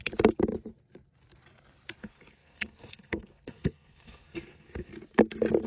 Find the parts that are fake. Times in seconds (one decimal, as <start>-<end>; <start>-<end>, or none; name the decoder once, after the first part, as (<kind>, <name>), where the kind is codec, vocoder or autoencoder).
2.0-4.9 (codec, SNAC)